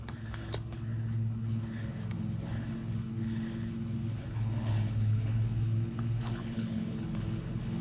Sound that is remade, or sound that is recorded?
remade